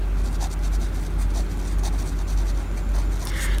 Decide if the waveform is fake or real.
real